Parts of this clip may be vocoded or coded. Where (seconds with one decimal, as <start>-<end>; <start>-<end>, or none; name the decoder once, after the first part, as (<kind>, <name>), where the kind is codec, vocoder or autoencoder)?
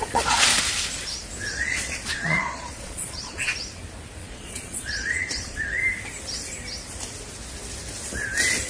0.0-0.5 (vocoder, Vocos); 1.5-3.5; 4.2-5.8